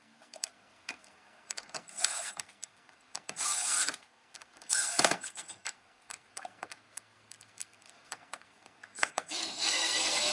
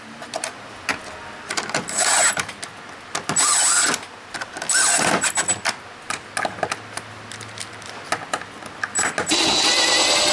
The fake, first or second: first